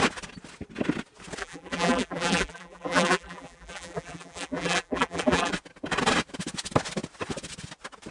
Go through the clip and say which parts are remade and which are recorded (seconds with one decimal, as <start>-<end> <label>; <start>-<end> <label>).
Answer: 0.0-1.4 recorded; 1.4-5.5 remade; 5.5-8.1 recorded